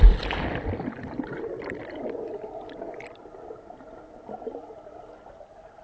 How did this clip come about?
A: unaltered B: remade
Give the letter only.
A